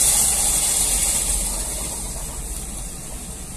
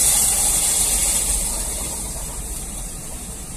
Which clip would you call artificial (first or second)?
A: second